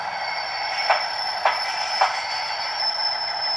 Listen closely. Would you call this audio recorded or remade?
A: recorded